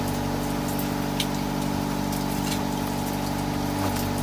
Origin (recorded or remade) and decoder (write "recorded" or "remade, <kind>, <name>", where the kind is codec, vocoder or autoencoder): recorded